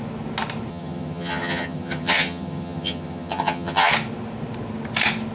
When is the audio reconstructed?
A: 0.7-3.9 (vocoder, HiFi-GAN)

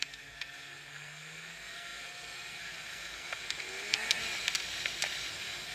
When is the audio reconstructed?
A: 0.0-4.2 (codec, SNAC); 5.3-5.7

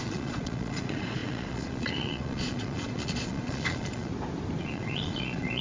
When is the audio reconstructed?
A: 0.0-4.1 (vocoder, Vocos); 4.6-5.6